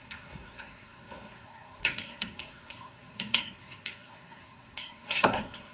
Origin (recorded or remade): remade